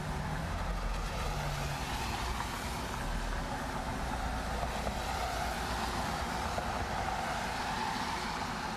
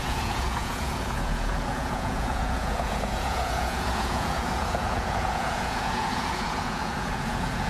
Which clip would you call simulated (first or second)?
second